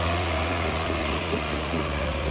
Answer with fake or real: fake